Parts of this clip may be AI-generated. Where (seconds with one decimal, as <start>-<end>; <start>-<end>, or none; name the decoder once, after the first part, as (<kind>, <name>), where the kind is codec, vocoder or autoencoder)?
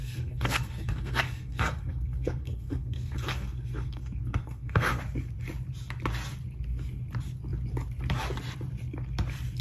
0.0-5.0 (codec, SNAC)